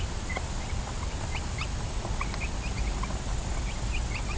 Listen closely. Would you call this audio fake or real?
real